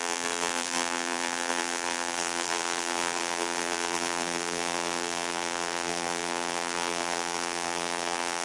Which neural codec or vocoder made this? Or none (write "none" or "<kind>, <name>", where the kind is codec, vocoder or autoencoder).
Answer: vocoder, BigVGAN v2